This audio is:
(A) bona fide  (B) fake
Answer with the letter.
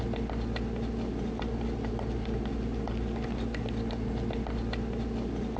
A